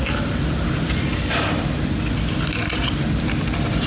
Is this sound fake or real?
real